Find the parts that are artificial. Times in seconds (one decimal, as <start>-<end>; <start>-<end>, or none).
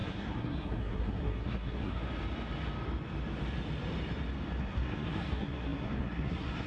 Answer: 0.0-2.0; 4.6-6.7